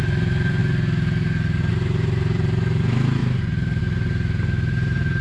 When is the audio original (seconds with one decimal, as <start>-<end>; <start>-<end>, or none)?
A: 0.6-1.7